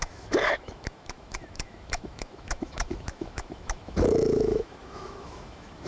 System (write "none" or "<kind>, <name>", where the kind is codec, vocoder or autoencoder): autoencoder, DAC-VAE